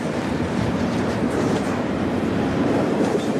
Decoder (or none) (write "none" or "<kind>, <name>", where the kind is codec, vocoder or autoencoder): vocoder, BigVGAN v2